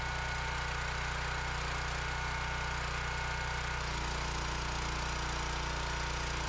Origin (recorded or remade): recorded